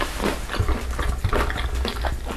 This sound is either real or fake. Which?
real